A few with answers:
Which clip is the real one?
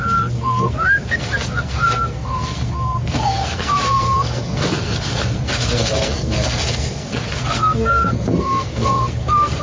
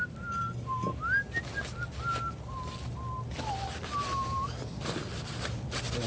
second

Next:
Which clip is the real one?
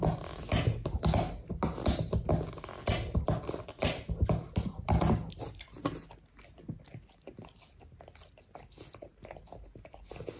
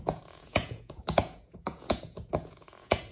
first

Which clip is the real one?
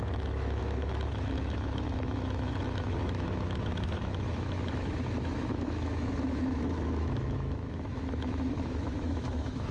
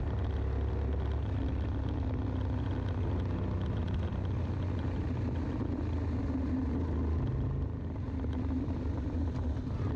second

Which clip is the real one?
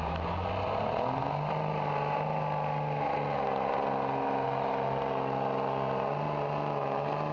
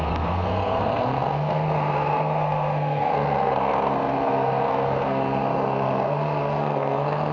first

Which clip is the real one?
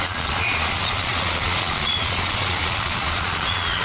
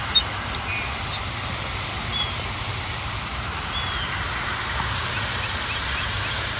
second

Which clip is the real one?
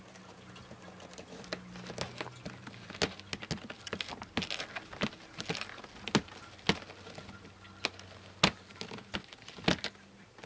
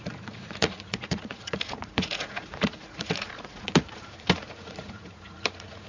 first